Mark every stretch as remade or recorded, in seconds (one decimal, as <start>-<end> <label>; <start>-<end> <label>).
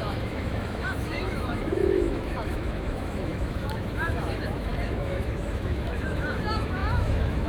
0.0-7.5 remade